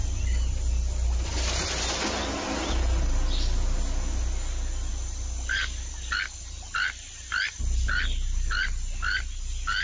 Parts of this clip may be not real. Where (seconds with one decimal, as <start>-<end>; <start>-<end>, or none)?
none